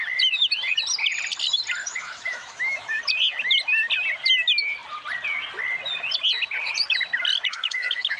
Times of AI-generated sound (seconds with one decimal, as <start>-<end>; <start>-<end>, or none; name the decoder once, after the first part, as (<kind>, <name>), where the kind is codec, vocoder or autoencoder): 1.8-3.0 (autoencoder, DAC-VAE); 7.5-8.2